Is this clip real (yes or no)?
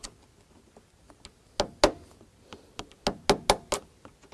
yes